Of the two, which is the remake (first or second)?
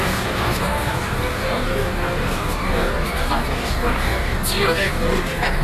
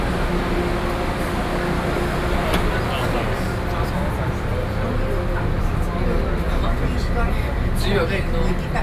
first